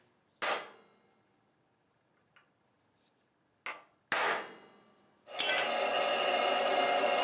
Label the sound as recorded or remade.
recorded